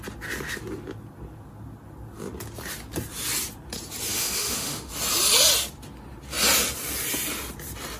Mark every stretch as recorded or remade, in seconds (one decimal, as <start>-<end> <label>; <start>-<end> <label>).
0.0-4.1 recorded; 4.1-4.9 remade; 4.9-8.0 recorded